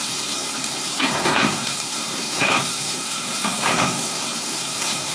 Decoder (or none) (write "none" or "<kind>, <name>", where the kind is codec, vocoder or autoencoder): codec, SNAC